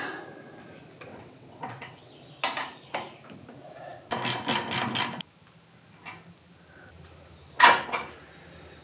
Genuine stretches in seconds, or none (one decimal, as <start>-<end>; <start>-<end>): 0.0-1.1; 2.1-8.8